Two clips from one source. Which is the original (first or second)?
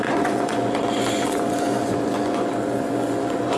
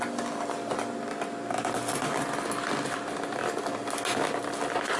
second